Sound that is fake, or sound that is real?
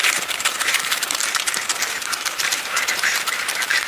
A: fake